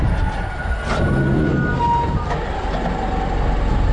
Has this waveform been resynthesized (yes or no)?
no